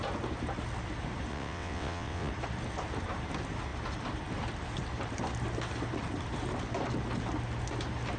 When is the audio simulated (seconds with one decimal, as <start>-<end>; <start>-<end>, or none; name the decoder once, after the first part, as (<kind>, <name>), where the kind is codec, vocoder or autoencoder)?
1.3-2.3 (vocoder, WaveNeXt)